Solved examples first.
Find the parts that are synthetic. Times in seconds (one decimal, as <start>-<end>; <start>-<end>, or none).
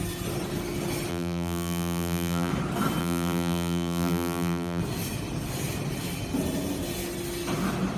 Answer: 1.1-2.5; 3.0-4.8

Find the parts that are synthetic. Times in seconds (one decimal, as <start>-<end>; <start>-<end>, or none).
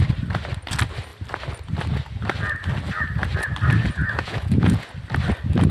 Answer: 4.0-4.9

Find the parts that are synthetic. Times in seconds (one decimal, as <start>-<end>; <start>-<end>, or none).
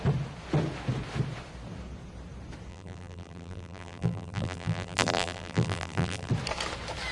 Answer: 2.7-6.3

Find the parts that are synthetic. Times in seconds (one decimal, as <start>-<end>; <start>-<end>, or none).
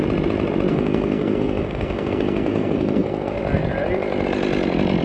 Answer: 0.7-3.4